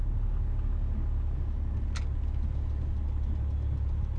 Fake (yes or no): no